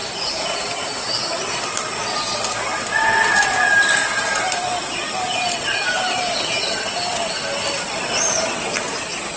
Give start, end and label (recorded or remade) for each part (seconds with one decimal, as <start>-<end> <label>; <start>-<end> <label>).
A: 0.0-9.4 recorded